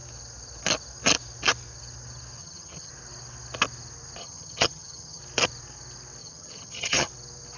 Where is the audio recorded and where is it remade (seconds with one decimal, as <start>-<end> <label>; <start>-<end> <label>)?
0.0-2.4 recorded; 2.4-2.9 remade; 2.9-4.2 recorded; 4.2-5.2 remade; 5.2-6.2 recorded; 6.2-7.1 remade; 7.1-7.6 recorded